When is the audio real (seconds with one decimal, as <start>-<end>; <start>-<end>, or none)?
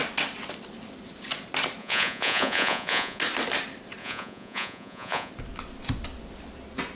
0.0-1.8; 3.2-4.0; 5.3-7.0